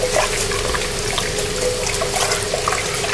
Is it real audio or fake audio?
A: real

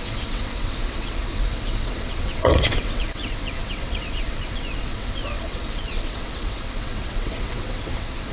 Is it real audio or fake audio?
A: fake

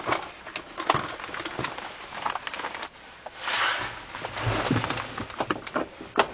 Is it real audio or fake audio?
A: real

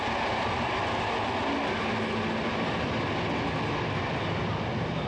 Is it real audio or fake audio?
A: real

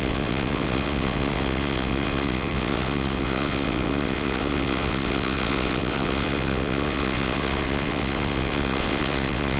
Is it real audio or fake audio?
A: fake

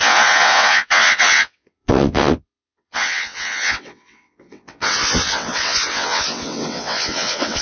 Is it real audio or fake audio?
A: fake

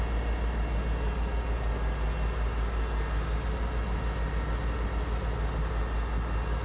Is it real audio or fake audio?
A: real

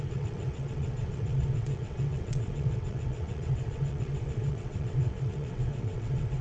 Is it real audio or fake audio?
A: fake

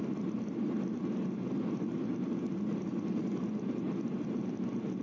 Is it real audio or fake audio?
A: real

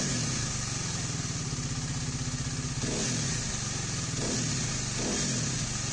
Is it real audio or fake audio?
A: real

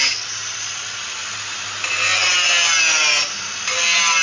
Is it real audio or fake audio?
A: real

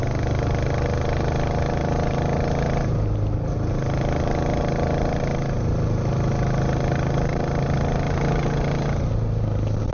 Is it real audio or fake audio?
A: real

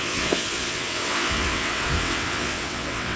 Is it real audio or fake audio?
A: fake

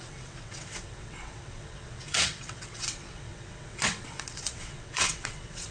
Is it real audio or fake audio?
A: fake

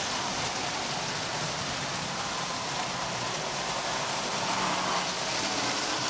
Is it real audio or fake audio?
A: real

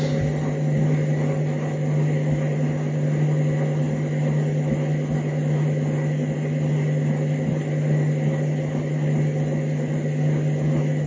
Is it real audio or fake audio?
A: real